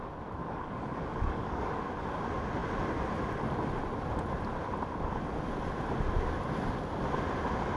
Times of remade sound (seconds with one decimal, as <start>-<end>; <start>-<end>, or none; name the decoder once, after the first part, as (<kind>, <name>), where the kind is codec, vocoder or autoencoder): 0.4-1.7 (codec, DAC)